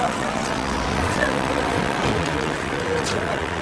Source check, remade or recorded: remade